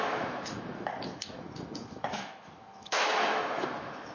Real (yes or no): no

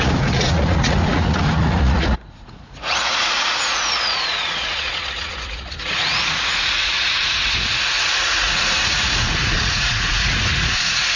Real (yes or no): no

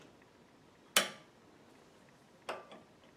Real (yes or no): yes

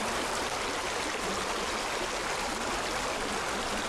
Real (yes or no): yes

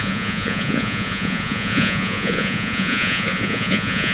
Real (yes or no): no